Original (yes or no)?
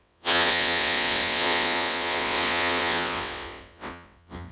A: no